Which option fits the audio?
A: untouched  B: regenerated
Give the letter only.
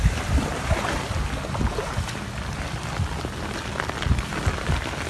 A